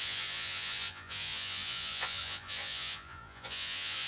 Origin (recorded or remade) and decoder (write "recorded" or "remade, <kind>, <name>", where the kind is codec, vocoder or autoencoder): remade, vocoder, Vocos